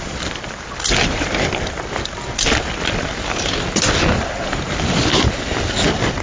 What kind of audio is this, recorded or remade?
recorded